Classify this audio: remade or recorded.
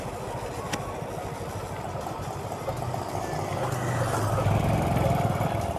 recorded